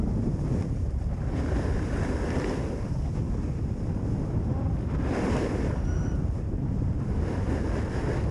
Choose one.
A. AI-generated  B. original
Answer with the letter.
A